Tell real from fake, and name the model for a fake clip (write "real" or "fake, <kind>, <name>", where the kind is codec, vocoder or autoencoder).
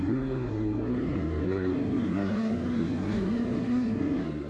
fake, codec, SNAC